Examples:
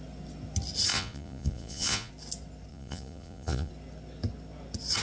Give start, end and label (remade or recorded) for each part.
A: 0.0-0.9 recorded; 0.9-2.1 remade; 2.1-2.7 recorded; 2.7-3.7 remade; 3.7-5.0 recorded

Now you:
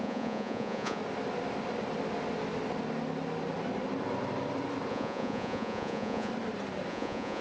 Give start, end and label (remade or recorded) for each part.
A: 0.0-1.0 remade; 1.0-4.9 recorded; 4.9-6.3 remade; 6.3-6.9 recorded; 6.9-7.4 remade

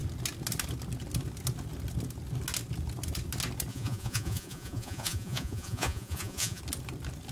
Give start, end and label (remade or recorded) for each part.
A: 0.0-3.7 recorded; 3.7-6.6 remade; 6.6-7.3 recorded

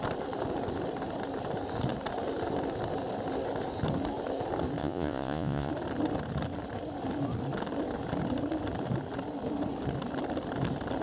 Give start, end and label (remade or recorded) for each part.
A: 0.0-4.8 recorded; 4.8-5.7 remade; 5.7-11.0 recorded

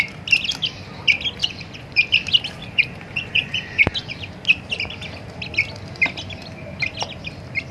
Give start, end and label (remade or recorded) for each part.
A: 0.0-1.4 recorded; 1.4-2.1 remade; 2.1-2.6 recorded; 2.6-4.1 remade; 4.1-7.7 recorded

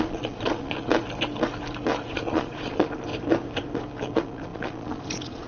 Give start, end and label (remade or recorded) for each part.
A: 0.0-0.9 remade; 0.9-2.0 recorded; 2.0-3.1 remade; 3.1-4.0 recorded; 4.0-5.5 remade

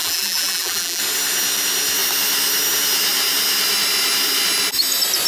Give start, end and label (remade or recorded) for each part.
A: 0.0-1.0 remade; 1.0-5.3 recorded